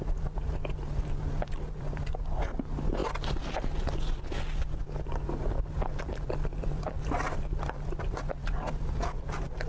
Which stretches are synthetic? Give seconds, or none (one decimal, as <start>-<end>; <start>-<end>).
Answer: none